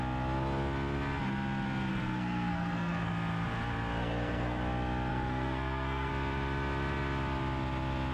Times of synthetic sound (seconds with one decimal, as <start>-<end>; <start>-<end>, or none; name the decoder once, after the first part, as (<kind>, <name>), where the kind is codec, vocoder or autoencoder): 1.9-3.1 (codec, SNAC); 4.0-4.6; 5.1-6.1